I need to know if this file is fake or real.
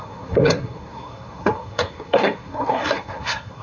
fake